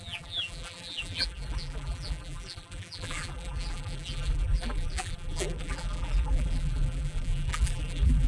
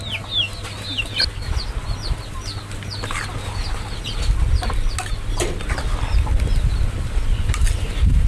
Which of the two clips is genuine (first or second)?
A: second